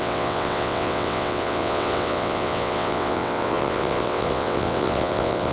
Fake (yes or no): yes